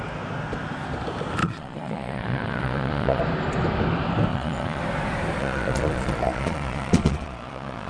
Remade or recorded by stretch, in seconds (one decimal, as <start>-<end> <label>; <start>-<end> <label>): 0.0-1.4 recorded; 1.4-3.2 remade; 3.2-4.3 recorded; 4.3-4.8 remade; 4.8-5.4 recorded; 5.4-7.9 remade